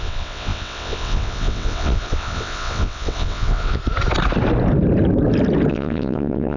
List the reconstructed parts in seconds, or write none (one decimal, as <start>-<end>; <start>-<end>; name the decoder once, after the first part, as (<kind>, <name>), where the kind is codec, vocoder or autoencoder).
0.0-3.8 (vocoder, WaveNeXt); 5.7-6.6